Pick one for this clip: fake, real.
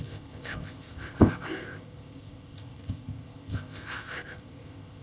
fake